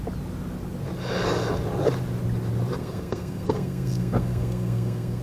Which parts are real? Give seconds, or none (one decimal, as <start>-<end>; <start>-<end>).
0.0-2.8